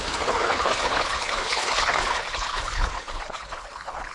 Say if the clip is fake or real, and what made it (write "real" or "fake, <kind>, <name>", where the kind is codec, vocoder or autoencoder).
fake, codec, HILCodec